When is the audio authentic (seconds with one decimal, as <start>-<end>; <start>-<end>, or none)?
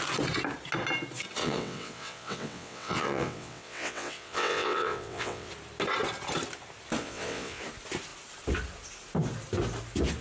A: 0.0-1.4; 5.5-7.0; 7.6-10.2